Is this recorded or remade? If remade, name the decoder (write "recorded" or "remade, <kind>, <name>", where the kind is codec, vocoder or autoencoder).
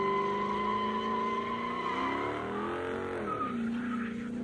recorded